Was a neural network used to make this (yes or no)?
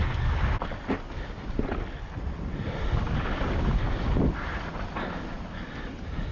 no